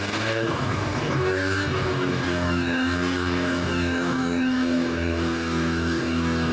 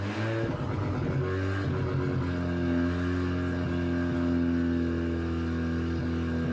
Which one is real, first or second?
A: second